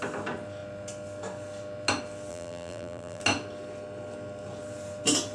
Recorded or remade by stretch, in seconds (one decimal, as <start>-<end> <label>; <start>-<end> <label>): 0.0-2.3 recorded; 2.3-3.2 remade; 3.2-5.3 recorded